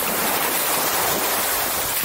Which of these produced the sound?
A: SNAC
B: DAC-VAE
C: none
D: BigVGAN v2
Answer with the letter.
C